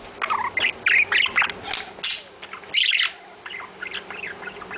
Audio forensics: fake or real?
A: real